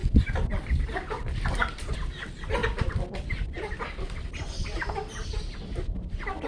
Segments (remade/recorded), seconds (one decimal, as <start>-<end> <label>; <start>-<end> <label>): 0.0-6.5 recorded